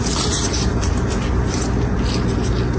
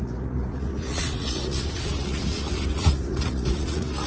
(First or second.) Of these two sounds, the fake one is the second